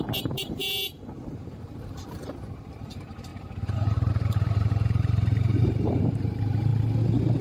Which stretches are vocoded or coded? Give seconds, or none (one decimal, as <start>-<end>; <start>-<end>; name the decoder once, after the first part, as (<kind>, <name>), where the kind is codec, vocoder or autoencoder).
0.0-0.6 (vocoder, BigVGAN v2); 1.3-6.7